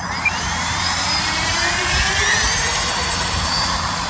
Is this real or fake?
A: fake